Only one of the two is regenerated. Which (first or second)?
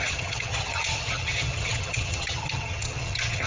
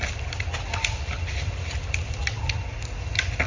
first